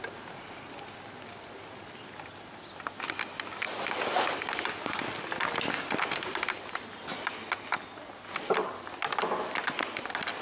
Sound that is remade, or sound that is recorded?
recorded